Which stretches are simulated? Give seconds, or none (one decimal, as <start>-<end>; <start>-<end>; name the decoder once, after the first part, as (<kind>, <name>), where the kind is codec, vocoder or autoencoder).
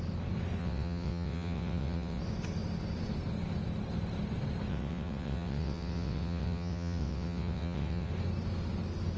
0.6-2.2 (vocoder, WaveNeXt); 4.7-8.1